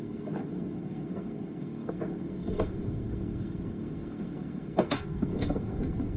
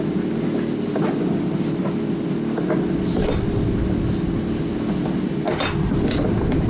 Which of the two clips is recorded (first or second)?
second